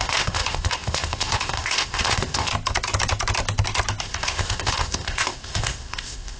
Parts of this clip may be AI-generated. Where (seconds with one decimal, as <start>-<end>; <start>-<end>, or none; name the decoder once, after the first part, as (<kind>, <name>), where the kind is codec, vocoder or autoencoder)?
0.0-2.5 (codec, ZipCodec); 4.0-6.4